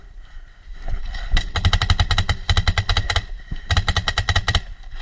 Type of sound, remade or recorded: remade